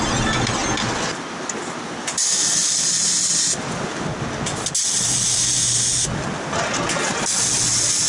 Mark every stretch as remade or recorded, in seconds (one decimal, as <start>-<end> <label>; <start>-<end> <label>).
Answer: 0.0-8.1 recorded